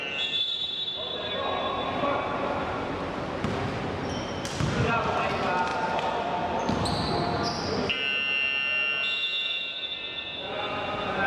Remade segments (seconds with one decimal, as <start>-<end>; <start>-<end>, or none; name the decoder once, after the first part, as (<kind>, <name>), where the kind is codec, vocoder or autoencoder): none